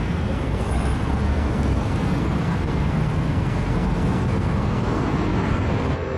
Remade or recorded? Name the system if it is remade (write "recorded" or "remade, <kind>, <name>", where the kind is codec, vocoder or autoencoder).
remade, codec, SNAC